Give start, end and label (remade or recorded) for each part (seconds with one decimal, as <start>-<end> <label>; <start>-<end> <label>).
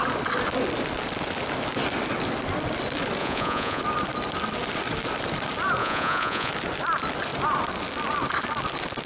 0.0-3.2 recorded; 3.2-3.8 remade; 3.8-5.8 recorded; 5.8-6.5 remade; 6.5-9.1 recorded